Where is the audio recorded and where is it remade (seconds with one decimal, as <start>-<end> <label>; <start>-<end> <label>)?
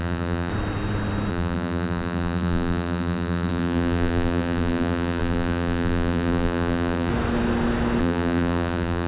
0.0-0.5 remade; 0.5-1.3 recorded; 1.3-7.1 remade; 7.1-8.0 recorded; 8.0-9.1 remade